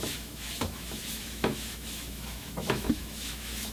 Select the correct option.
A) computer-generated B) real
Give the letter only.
A